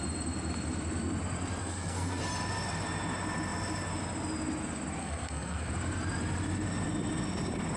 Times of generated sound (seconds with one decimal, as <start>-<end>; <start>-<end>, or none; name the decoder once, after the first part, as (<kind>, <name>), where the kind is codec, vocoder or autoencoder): 1.6-2.2 (codec, SNAC); 5.0-5.7